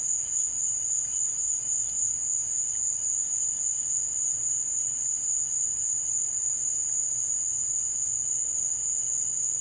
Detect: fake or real real